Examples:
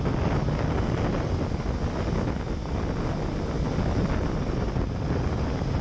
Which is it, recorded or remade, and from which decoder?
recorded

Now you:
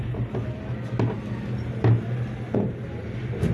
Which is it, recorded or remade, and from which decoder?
recorded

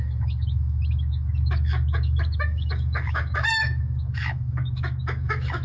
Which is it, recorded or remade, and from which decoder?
remade, autoencoder, DAC-VAE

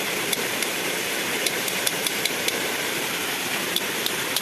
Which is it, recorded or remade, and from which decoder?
remade, vocoder, BigVGAN v2